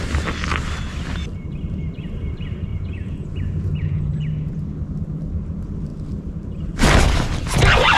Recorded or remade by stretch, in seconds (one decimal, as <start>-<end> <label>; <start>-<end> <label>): 0.0-2.7 recorded; 2.7-4.5 remade; 4.5-8.0 recorded